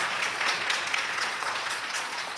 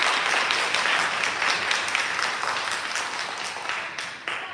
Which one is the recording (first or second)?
second